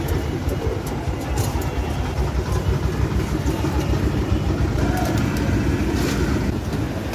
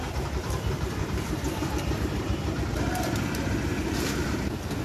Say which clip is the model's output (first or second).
second